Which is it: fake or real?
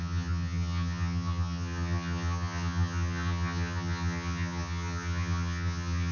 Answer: fake